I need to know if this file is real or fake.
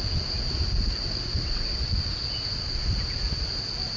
real